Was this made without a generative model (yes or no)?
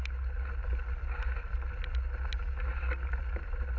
yes